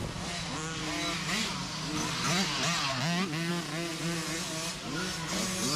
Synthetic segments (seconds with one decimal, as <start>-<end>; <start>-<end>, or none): none